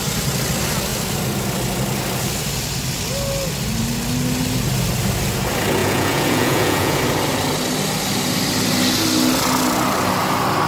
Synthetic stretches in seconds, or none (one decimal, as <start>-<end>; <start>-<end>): 5.8-7.0